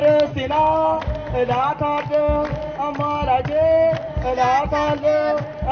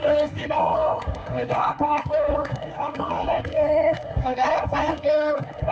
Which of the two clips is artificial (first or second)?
second